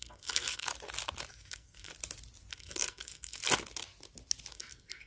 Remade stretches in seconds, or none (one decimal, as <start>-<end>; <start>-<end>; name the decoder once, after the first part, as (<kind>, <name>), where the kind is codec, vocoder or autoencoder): 0.0-0.7 (codec, SNAC); 1.3-1.9; 2.5-3.4; 4.5-5.1